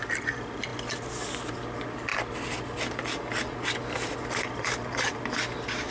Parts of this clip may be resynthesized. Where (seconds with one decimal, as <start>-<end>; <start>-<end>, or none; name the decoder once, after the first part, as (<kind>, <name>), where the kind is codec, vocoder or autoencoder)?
none